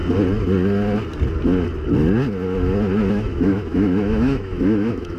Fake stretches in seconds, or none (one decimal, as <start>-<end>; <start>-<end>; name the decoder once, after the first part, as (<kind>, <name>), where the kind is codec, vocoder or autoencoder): 3.1-5.2 (autoencoder, DAC-VAE)